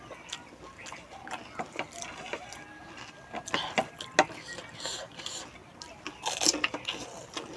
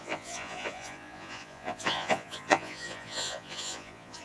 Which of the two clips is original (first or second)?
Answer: first